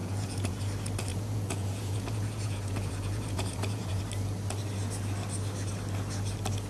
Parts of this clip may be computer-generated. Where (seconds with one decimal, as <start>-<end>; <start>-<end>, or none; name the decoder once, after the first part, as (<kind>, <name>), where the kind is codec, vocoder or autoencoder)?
0.0-0.6 (vocoder, Vocos); 1.1-4.0